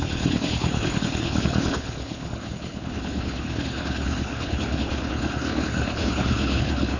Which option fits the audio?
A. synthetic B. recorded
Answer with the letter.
A